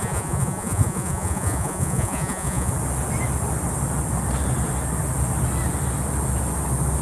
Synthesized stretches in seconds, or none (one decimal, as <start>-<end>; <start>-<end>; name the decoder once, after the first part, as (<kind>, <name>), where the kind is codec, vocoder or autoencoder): 0.0-2.7 (vocoder, Vocos)